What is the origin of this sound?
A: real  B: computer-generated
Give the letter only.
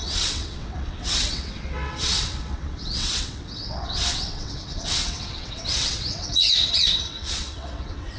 B